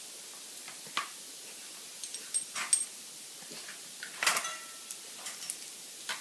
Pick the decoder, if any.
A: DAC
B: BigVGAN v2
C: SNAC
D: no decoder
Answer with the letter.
D